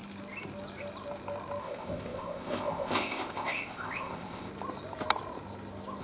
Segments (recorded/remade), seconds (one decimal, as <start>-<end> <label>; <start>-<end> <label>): 0.0-1.6 recorded; 1.6-4.5 remade; 4.5-6.0 recorded